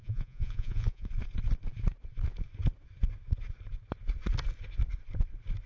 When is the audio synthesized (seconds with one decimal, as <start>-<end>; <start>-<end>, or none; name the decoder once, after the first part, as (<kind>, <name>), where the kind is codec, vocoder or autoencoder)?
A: 0.0-1.1 (vocoder, Vocos)

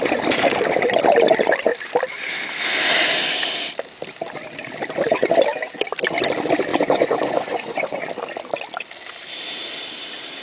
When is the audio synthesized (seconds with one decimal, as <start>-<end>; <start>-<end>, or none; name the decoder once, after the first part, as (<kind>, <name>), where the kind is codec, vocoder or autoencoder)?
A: 6.7-8.0 (vocoder, Vocos)

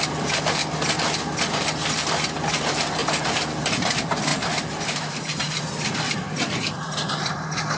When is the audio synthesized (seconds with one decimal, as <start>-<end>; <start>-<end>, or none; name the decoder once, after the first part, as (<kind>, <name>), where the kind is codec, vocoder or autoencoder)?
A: 0.0-0.6 (vocoder, BigVGAN v2); 1.4-7.8

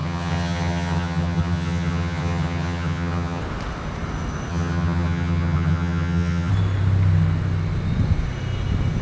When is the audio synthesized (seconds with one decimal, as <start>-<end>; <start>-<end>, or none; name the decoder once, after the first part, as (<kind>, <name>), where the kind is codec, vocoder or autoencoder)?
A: 0.0-3.4 (vocoder, HiFi-GAN); 4.5-6.5

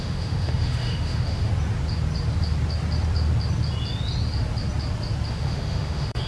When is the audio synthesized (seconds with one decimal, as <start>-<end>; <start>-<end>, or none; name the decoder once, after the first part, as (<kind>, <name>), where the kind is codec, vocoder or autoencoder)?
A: 0.0-1.5 (autoencoder, DAC-VAE); 5.3-6.3

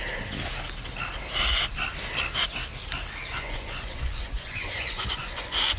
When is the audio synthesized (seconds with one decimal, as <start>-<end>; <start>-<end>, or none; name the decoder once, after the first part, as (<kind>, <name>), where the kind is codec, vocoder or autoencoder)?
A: 3.3-5.8 (vocoder, Vocos)

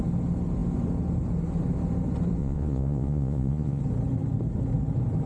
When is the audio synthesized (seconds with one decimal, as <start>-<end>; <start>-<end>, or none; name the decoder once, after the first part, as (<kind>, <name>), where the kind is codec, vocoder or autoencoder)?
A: 2.4-3.8 (vocoder, Vocos)